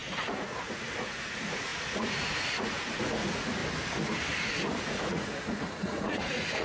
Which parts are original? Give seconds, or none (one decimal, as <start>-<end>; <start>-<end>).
3.6-4.8